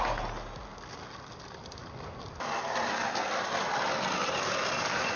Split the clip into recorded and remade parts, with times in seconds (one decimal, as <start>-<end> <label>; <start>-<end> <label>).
0.0-5.2 recorded